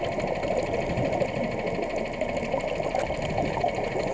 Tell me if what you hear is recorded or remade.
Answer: recorded